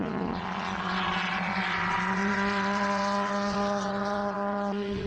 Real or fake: fake